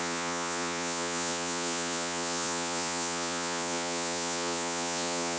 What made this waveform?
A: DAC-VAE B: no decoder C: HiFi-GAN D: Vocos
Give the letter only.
D